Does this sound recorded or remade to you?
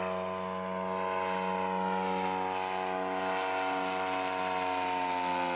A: recorded